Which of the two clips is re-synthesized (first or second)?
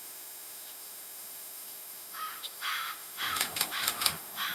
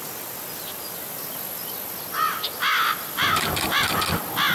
first